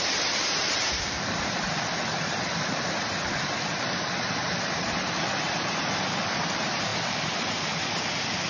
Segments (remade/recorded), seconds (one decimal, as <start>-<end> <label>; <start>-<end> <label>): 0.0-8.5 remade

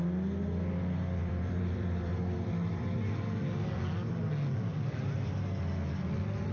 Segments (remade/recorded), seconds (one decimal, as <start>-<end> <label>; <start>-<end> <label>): 0.0-1.2 recorded; 1.2-3.0 remade; 3.0-4.7 recorded; 4.7-5.3 remade; 5.3-6.5 recorded

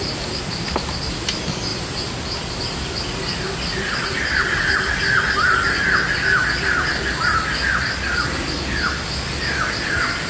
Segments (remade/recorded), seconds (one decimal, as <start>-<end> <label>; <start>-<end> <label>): 0.0-1.7 recorded; 1.7-2.6 remade; 2.6-10.3 recorded